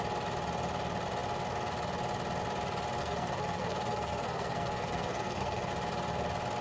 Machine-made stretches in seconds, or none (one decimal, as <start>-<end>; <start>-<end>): 3.0-5.7